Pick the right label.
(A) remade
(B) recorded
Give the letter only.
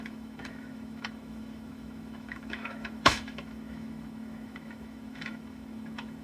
A